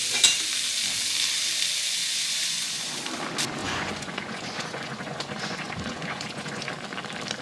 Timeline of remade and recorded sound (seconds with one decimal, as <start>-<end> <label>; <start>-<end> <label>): 0.0-2.0 recorded; 2.0-3.0 remade; 3.0-3.6 recorded; 3.6-6.7 remade; 6.7-7.4 recorded